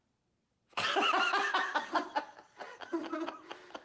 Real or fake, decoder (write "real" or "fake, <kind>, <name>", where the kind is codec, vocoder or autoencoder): fake, vocoder, BigVGAN v2